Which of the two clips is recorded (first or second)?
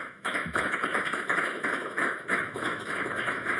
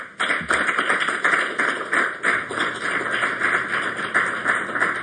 second